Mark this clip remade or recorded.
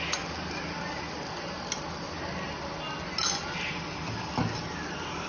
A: recorded